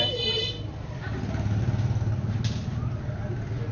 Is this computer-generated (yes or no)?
no